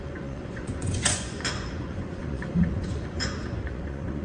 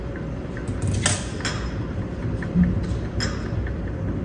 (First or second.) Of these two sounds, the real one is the second